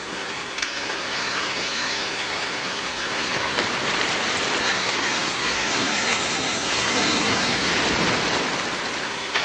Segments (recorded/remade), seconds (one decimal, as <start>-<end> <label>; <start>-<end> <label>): 0.0-3.6 remade; 3.6-4.6 recorded; 4.6-7.7 remade; 7.7-9.0 recorded; 9.0-9.4 remade

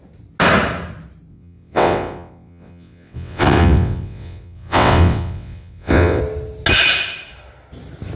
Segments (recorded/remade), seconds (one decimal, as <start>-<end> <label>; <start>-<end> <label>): 0.0-1.3 recorded; 1.3-6.2 remade; 6.2-8.2 recorded